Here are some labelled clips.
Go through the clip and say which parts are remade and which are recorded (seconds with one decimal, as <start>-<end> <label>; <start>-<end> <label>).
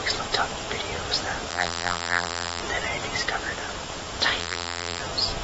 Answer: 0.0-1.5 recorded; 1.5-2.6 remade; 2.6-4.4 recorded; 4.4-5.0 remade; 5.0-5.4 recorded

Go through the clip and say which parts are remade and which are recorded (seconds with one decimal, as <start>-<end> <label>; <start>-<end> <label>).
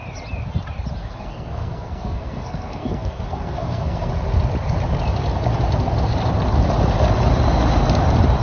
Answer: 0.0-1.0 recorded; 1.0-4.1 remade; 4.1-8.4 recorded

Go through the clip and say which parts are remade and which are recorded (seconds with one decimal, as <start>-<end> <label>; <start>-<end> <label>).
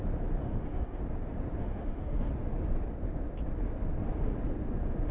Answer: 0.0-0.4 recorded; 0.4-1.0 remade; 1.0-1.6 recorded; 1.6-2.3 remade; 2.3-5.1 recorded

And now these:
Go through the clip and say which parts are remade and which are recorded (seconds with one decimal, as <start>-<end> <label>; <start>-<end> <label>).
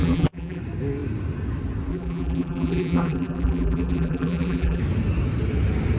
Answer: 0.0-0.6 remade; 0.6-1.9 recorded; 1.9-4.8 remade; 4.8-6.0 recorded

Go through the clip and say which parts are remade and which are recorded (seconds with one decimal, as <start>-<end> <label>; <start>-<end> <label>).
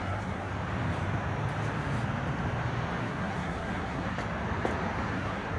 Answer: 0.0-0.5 remade; 0.5-3.0 recorded; 3.0-4.2 remade; 4.2-5.1 recorded; 5.1-5.6 remade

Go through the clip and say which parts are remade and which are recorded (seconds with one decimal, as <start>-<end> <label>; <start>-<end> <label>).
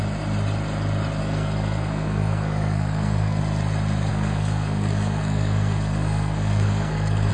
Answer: 0.0-1.2 recorded; 1.2-3.4 remade; 3.4-4.1 recorded; 4.1-7.3 remade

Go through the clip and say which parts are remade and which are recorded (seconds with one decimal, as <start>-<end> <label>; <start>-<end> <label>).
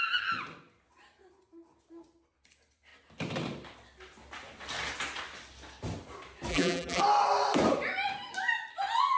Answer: 0.0-6.5 recorded; 6.5-7.0 remade; 7.0-9.2 recorded